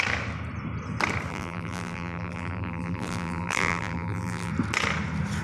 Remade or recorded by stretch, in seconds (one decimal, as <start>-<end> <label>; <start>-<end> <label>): 0.0-1.3 recorded; 1.3-4.5 remade; 4.5-5.4 recorded